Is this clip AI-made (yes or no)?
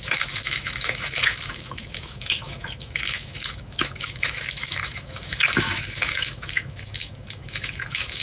yes